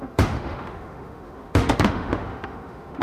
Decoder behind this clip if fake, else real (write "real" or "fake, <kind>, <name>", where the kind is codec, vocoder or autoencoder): fake, autoencoder, DAC-VAE